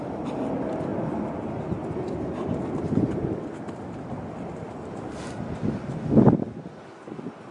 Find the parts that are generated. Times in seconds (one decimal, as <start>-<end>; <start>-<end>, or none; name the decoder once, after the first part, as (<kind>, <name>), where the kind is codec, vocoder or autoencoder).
none